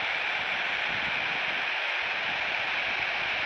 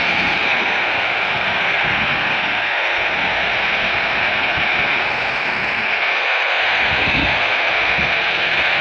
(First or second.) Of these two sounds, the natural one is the first